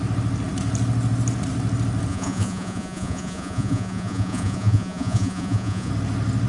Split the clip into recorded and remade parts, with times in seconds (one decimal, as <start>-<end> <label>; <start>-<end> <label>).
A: 0.0-2.1 recorded; 2.1-5.9 remade; 5.9-6.5 recorded